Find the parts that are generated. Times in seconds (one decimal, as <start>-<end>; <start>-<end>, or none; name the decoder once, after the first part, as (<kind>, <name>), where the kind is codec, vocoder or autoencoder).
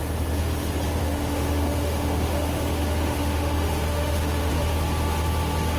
1.0-4.5 (autoencoder, DAC-VAE)